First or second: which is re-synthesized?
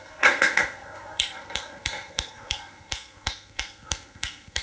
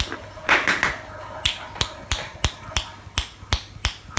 first